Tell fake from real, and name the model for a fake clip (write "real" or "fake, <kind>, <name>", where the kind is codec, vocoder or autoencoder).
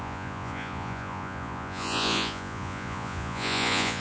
fake, vocoder, Vocos